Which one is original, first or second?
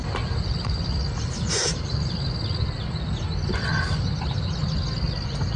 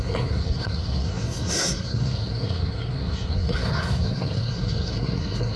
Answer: first